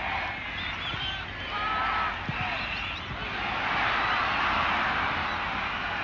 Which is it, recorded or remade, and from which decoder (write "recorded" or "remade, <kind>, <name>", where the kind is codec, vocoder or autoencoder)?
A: recorded